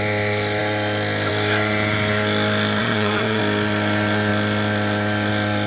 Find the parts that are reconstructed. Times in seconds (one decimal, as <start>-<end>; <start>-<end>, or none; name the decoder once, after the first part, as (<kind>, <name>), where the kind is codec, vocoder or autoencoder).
2.8-3.4 (vocoder, Vocos)